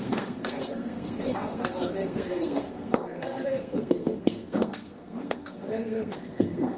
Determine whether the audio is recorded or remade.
remade